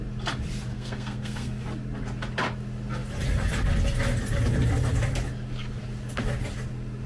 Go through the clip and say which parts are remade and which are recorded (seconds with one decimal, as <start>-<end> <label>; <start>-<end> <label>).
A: 0.0-0.7 recorded; 0.7-1.6 remade; 1.6-7.1 recorded